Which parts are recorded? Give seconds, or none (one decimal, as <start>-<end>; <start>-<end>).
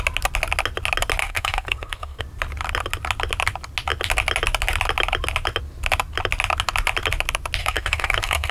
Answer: 0.0-1.2; 2.2-7.6